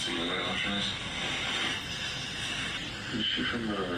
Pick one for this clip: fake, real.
real